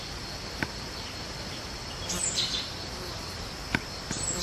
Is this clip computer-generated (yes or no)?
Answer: no